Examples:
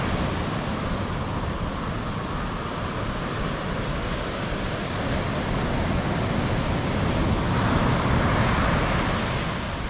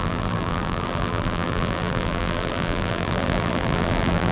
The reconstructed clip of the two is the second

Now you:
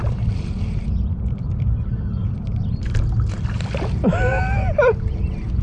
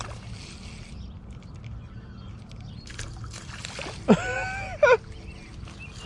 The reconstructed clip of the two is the first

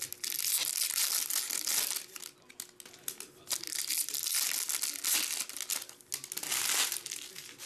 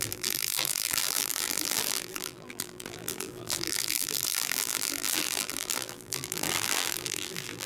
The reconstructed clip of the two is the second